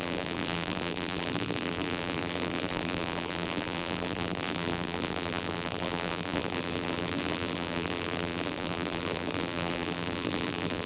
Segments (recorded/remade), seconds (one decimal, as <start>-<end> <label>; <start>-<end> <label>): 0.0-10.9 remade